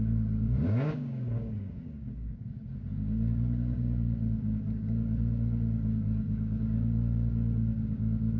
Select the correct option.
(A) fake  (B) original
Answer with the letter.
A